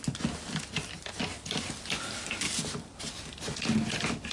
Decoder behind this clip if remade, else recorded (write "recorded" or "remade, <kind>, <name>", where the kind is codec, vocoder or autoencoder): recorded